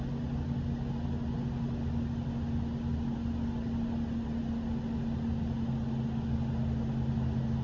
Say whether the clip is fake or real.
real